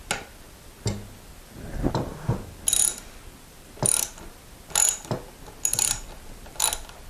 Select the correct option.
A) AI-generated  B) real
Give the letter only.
B